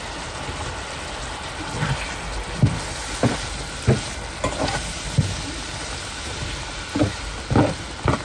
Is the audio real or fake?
real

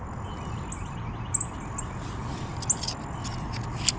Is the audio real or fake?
real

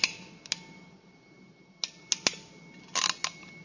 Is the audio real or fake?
real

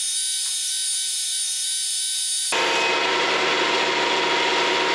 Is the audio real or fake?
real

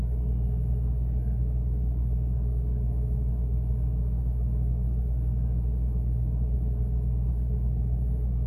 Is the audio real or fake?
real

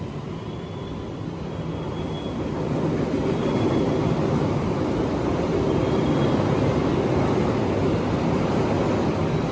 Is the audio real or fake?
real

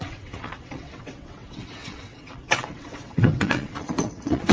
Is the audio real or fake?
fake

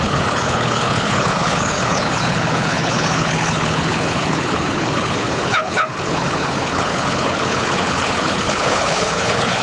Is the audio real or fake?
fake